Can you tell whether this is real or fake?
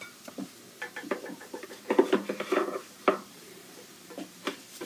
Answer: fake